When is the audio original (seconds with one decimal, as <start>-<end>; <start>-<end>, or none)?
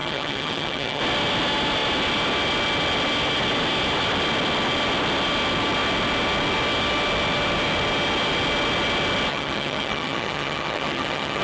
1.0-9.3